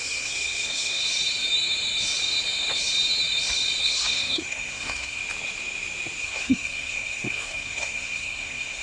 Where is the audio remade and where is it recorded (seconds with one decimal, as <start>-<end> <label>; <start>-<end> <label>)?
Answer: 0.0-1.0 remade; 1.0-3.8 recorded; 3.8-5.2 remade; 5.2-6.2 recorded; 6.2-8.8 remade